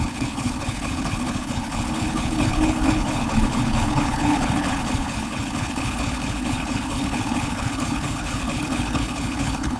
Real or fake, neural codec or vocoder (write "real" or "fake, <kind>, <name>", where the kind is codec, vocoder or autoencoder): fake, codec, HILCodec